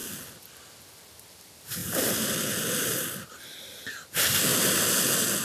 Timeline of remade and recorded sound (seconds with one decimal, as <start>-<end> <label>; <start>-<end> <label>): 0.0-1.8 recorded; 1.8-3.4 remade; 3.4-4.5 recorded; 4.5-5.4 remade